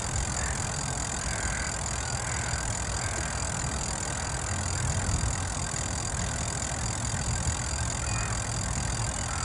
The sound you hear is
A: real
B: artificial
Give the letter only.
A